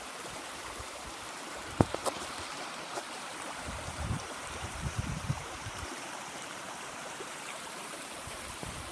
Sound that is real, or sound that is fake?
fake